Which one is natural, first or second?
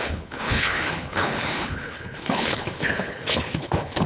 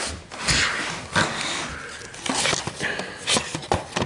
second